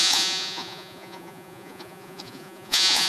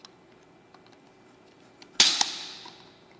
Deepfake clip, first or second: first